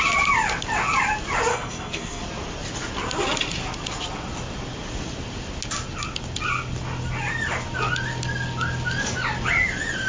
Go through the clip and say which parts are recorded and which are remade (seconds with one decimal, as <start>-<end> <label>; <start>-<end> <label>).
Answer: 0.0-1.5 recorded; 1.5-2.2 remade; 2.2-10.1 recorded